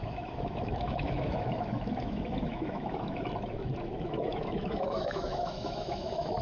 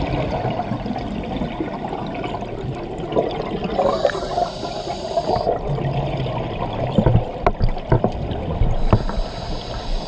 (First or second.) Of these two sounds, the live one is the second